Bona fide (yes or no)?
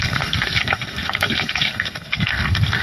no